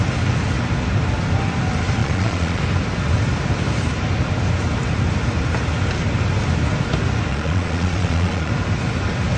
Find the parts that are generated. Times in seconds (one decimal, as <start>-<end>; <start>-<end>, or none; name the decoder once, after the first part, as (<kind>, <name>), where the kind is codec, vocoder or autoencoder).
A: 2.0-2.6 (vocoder, Vocos); 7.3-8.5